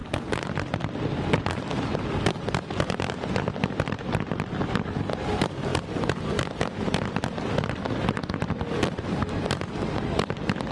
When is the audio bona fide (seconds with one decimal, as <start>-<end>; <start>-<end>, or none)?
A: 0.0-10.7

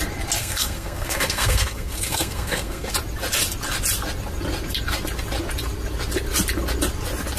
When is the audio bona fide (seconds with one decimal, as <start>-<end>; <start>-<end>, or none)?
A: 0.0-0.4; 2.9-7.4

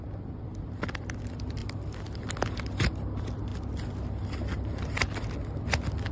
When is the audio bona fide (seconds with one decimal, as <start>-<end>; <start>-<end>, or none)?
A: 1.6-2.6; 3.5-6.1

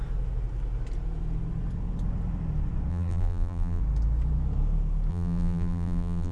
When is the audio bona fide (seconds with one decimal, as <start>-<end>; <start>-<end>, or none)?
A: 0.0-2.9; 3.8-5.1

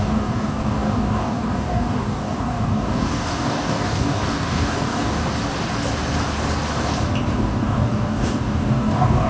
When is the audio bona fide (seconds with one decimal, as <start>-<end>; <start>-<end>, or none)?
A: 5.2-7.3

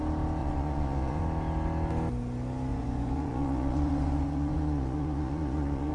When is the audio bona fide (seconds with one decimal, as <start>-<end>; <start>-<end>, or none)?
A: 0.0-0.4; 1.2-2.7